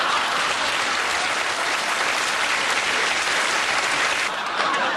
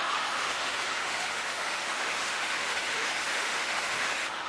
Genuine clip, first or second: first